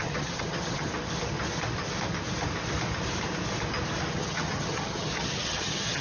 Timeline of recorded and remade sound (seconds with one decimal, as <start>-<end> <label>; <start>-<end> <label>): 0.0-0.9 remade; 0.9-4.1 recorded; 4.1-6.0 remade